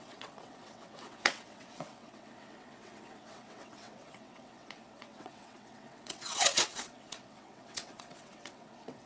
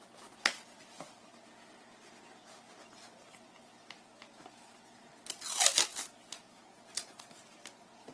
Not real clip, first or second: first